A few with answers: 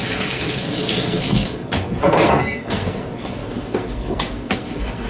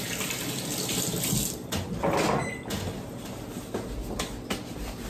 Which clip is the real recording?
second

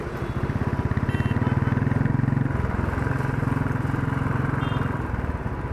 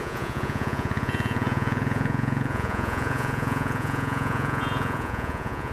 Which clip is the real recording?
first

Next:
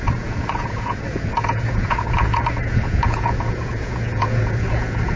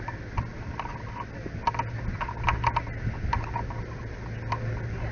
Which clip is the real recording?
second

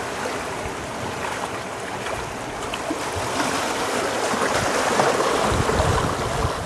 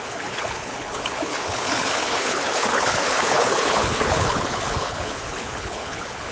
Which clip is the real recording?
first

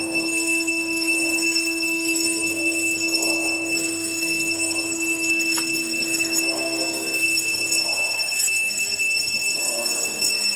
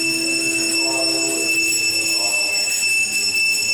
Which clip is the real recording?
second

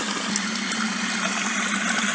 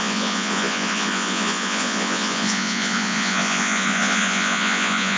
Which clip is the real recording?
first